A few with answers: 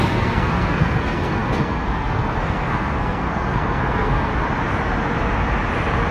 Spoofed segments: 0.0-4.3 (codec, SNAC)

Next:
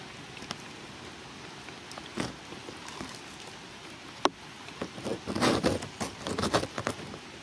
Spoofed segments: none

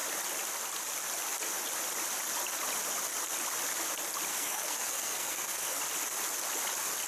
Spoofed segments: 4.3-5.8 (codec, SNAC)

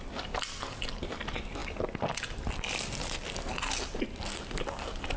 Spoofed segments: none

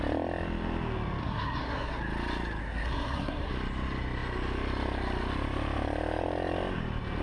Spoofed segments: 1.2-2.0 (codec, SNAC); 2.6-3.5